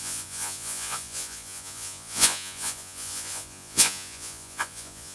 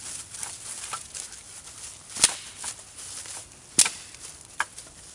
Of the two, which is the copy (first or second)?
first